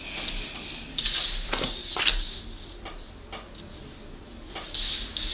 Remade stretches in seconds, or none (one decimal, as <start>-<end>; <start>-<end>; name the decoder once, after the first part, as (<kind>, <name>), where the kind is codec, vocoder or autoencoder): none

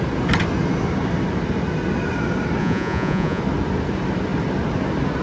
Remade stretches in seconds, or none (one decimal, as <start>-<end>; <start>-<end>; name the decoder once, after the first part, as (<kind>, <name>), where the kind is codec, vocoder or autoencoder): 2.6-3.4 (vocoder, Vocos)